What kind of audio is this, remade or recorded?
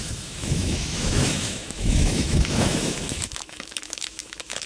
remade